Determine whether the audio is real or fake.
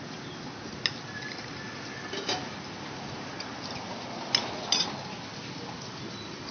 real